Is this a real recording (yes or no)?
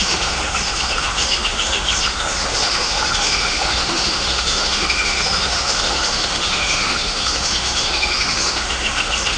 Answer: no